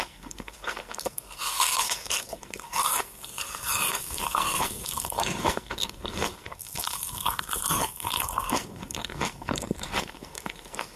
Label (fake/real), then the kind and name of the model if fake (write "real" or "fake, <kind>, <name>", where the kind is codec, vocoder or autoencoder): fake, codec, SNAC